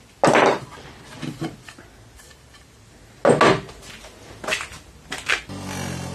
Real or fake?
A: real